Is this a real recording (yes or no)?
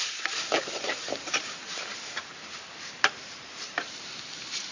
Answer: no